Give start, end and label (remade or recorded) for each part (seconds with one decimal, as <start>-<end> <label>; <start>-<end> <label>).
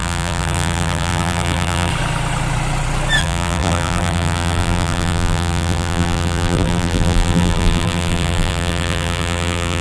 0.0-1.9 remade; 1.9-3.2 recorded; 3.2-9.8 remade